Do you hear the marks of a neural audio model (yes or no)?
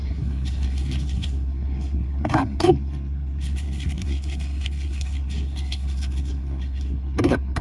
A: yes